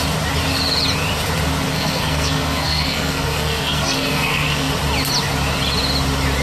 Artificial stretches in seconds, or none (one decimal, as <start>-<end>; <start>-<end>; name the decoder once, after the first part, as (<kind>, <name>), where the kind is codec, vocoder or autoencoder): 1.7-4.7 (codec, SNAC)